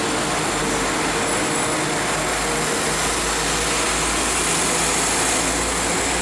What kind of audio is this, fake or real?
real